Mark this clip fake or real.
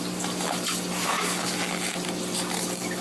real